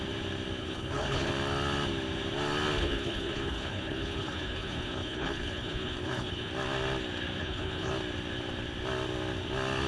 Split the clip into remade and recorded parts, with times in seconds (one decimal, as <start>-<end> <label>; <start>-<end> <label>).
0.0-0.6 recorded; 0.6-1.3 remade; 1.3-2.8 recorded; 2.8-6.5 remade; 6.5-7.4 recorded; 7.4-7.9 remade; 7.9-9.9 recorded